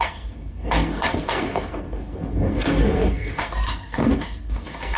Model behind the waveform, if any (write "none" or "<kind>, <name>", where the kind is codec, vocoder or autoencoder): codec, SNAC